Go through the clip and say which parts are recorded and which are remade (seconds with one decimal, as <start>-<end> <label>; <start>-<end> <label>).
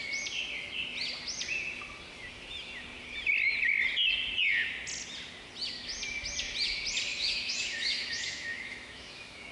0.0-7.1 recorded; 7.1-9.5 remade